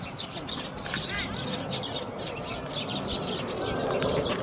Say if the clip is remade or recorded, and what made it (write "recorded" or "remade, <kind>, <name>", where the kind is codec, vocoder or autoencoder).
recorded